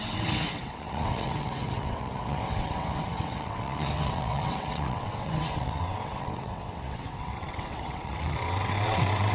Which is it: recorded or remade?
remade